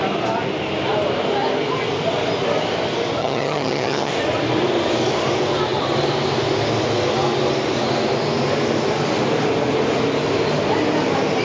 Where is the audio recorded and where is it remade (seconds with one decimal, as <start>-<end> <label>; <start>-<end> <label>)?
0.0-3.2 recorded; 3.2-4.1 remade; 4.1-11.4 recorded